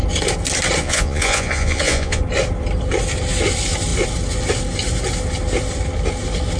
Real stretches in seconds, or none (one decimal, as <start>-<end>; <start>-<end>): 0.0-0.8; 2.2-6.6